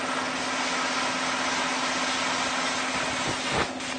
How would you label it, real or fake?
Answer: real